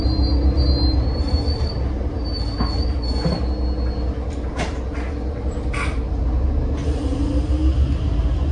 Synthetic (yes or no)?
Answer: no